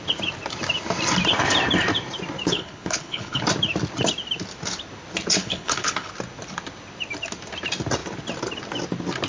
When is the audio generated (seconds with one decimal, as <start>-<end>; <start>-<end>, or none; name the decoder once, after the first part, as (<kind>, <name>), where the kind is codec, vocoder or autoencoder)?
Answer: 2.5-3.4 (codec, HILCodec); 5.4-6.1